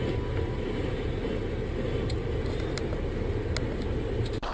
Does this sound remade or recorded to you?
recorded